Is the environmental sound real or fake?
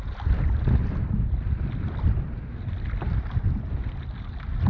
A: real